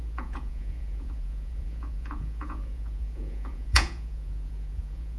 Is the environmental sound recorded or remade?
remade